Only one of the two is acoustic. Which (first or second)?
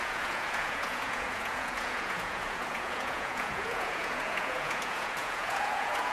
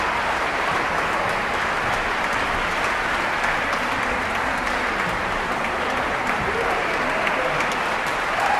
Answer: second